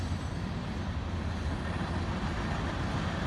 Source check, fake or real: real